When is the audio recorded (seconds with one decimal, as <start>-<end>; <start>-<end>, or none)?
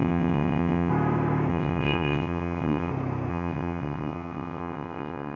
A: 0.9-1.5; 2.9-3.3